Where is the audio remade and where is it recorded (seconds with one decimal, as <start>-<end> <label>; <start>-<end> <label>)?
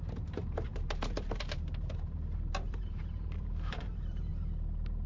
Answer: 0.0-4.3 remade; 4.3-5.1 recorded